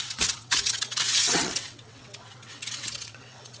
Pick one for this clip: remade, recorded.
remade